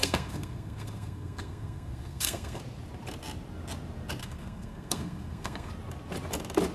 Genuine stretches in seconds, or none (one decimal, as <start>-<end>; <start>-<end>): 2.6-4.2; 5.7-6.7